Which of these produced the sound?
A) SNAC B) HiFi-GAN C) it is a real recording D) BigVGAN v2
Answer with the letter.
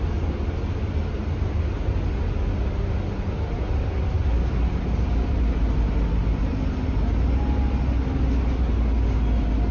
C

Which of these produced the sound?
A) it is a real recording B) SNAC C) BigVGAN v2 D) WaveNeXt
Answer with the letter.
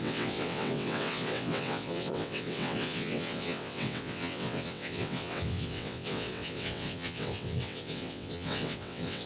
D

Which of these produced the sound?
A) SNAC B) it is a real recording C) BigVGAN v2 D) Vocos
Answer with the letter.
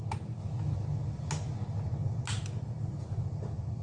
B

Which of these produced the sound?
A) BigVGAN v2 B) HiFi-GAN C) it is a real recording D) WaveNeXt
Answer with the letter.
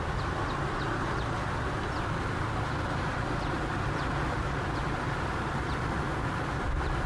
C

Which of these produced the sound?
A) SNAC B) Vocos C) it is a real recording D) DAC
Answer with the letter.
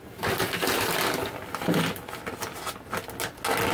C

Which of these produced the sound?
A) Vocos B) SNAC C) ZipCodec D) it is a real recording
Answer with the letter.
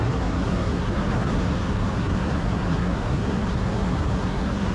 B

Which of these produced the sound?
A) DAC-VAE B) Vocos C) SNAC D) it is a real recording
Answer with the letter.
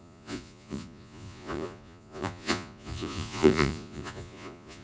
B